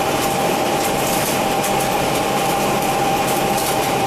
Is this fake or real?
fake